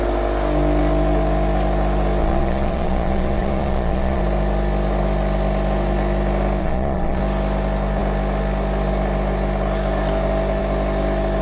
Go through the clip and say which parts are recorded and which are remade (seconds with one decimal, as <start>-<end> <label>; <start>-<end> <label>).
0.0-2.2 recorded; 2.2-4.2 remade; 4.2-6.6 recorded; 6.6-7.2 remade; 7.2-11.4 recorded

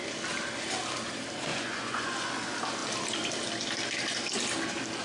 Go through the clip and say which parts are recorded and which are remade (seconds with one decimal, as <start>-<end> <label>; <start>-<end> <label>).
0.0-1.5 recorded; 1.5-2.3 remade; 2.3-5.0 recorded

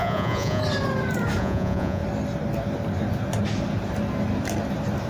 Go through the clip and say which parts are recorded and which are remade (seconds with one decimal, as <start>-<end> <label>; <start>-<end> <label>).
0.0-0.6 remade; 0.6-1.4 recorded; 1.4-2.0 remade; 2.0-5.1 recorded

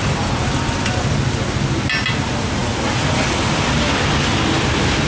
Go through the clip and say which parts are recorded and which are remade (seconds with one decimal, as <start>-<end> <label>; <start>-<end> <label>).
0.0-5.1 recorded

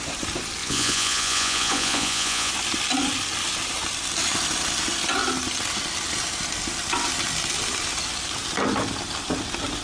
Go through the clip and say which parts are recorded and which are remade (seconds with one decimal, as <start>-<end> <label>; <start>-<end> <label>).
0.0-0.6 recorded; 0.6-2.5 remade; 2.5-9.8 recorded

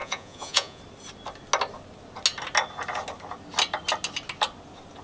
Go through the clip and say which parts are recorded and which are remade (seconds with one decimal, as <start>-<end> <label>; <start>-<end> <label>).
0.0-0.8 remade; 0.8-5.0 recorded